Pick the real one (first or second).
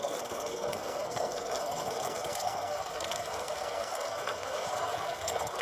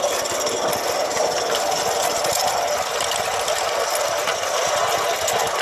second